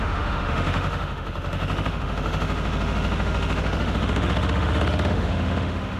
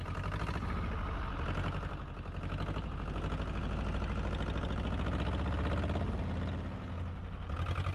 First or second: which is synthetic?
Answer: first